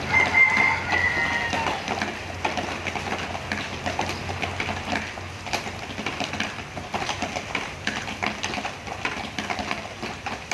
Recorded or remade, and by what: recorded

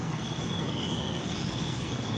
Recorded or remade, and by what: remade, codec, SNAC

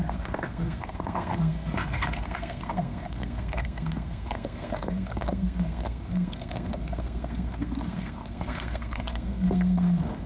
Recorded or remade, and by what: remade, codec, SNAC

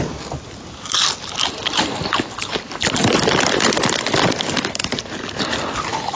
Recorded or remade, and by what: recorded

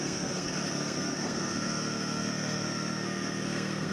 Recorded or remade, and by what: remade, codec, SNAC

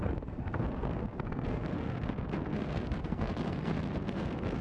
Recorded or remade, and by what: remade, codec, SNAC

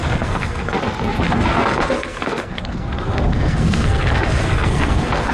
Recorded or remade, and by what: remade, codec, SNAC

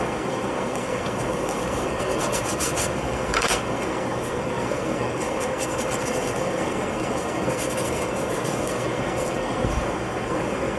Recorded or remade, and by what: remade, codec, SNAC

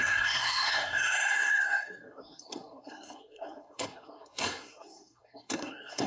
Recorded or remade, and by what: remade, codec, SNAC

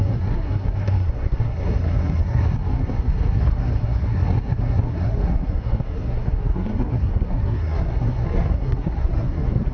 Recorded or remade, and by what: remade, codec, SNAC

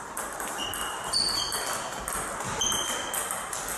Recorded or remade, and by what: recorded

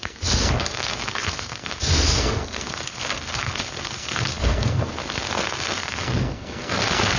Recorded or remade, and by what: remade, codec, SNAC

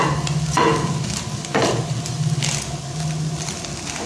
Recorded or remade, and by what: recorded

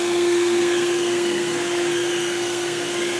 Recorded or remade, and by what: remade, codec, SNAC